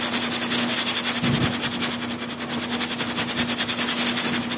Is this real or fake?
real